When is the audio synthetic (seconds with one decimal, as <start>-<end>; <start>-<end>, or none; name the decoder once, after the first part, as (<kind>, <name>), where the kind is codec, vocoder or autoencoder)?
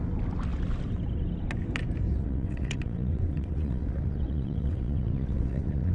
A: 2.1-5.9 (vocoder, WaveNeXt)